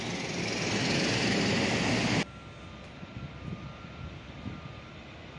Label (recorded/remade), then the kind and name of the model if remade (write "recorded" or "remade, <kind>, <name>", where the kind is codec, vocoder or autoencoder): recorded